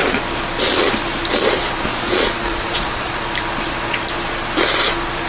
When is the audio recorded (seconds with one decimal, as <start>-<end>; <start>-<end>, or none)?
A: 0.0-1.9; 3.1-5.3